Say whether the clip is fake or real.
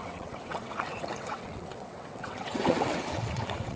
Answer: fake